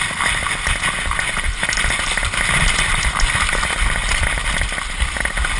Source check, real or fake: real